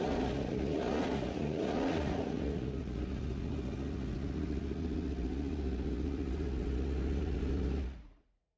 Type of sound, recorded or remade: remade